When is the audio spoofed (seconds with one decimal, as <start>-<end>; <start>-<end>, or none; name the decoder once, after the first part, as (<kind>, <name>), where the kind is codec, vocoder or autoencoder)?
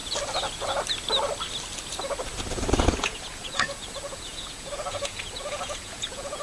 2.8-6.4 (vocoder, Vocos)